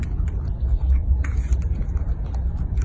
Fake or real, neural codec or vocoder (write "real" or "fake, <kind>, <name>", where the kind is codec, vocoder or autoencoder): real